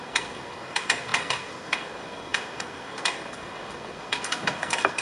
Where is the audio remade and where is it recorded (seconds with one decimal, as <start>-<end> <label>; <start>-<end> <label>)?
0.0-5.0 remade